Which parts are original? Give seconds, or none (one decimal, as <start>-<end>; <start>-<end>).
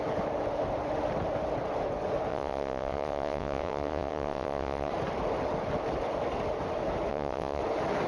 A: 0.0-2.3; 4.9-7.1; 7.6-8.1